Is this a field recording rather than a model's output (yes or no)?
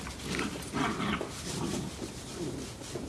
yes